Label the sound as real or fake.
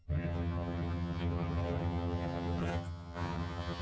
fake